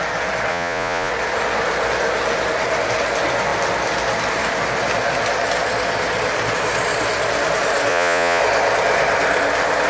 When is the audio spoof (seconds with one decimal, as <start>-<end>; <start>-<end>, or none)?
0.5-1.1; 7.9-8.4